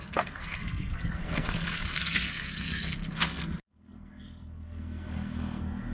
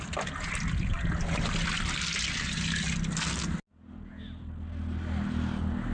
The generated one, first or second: first